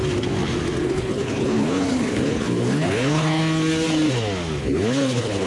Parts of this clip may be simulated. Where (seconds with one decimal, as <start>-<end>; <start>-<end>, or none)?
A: 0.8-3.4; 4.6-5.5